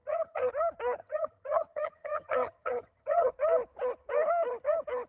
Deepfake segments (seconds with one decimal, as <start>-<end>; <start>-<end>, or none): 0.0-0.5; 1.0-3.3